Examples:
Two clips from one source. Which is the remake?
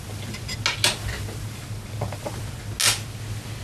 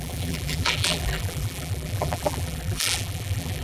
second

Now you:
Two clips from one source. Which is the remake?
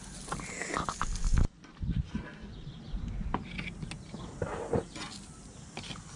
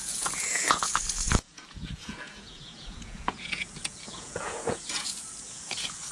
second